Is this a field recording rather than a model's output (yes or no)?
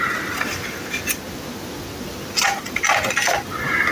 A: yes